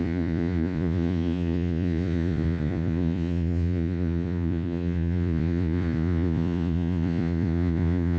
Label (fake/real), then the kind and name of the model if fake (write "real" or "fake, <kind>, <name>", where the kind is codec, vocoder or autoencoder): fake, vocoder, Vocos